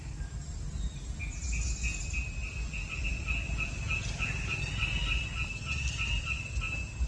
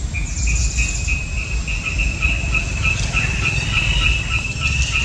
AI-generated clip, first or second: second